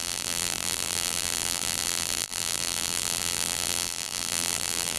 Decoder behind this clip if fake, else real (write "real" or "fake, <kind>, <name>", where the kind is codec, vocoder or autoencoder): fake, vocoder, BigVGAN v2